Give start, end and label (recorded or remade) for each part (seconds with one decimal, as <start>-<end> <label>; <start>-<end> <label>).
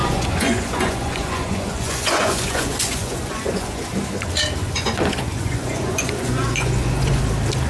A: 0.0-3.9 remade; 3.9-4.6 recorded; 4.6-7.2 remade; 7.2-7.7 recorded